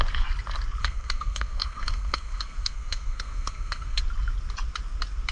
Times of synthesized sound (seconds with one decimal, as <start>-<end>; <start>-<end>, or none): 0.8-4.0